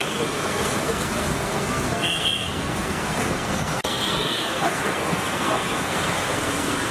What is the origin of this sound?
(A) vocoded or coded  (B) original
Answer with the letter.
A